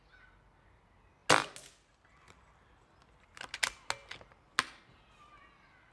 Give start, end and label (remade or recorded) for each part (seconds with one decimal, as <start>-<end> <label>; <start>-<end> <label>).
0.0-5.9 recorded